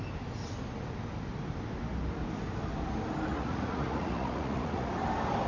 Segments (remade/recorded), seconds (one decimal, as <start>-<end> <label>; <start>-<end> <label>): 0.0-3.3 recorded; 3.3-4.9 remade; 4.9-5.5 recorded